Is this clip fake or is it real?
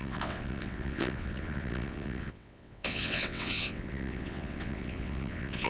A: fake